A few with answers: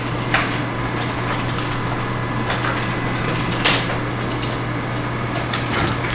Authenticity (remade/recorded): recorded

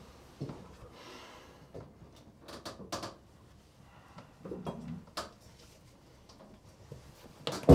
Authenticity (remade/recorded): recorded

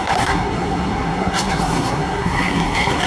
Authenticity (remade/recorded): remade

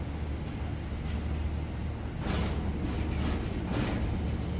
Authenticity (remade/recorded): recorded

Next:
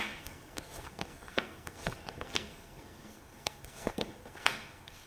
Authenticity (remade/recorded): remade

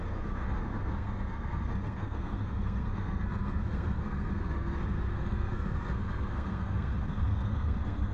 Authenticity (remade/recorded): remade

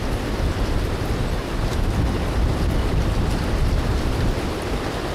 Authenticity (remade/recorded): recorded